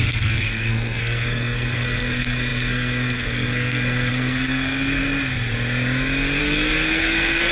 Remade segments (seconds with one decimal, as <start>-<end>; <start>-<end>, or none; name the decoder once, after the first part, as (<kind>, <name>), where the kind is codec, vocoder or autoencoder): 0.0-5.0 (codec, SNAC); 6.4-7.5